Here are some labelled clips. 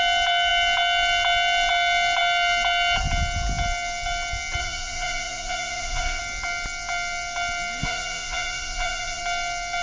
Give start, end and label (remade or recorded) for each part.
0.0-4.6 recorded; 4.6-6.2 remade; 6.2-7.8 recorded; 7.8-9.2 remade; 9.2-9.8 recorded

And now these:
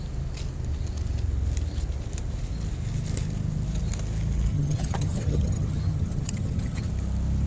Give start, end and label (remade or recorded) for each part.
0.0-4.5 recorded; 4.5-6.9 remade; 6.9-7.5 recorded

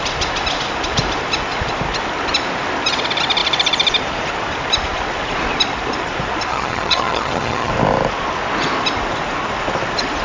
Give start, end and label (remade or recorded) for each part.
0.0-6.5 recorded; 6.5-7.7 remade; 7.7-10.2 recorded

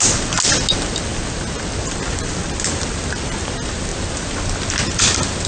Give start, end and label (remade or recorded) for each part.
0.0-5.5 recorded

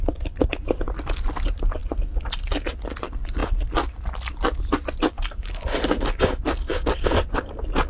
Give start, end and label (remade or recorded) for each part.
0.0-6.7 recorded; 6.7-7.5 remade; 7.5-7.9 recorded

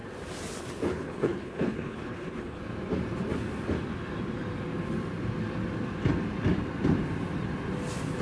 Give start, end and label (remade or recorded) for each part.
0.0-0.9 recorded; 0.9-2.6 remade; 2.6-8.2 recorded

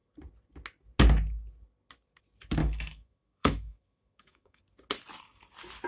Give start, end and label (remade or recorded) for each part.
0.0-2.6 recorded; 2.6-4.6 remade; 4.6-5.9 recorded